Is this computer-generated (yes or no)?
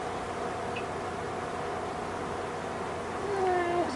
no